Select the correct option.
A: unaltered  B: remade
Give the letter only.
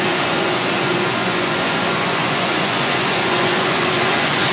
B